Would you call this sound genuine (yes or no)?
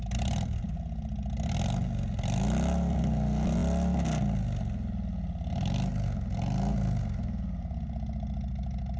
yes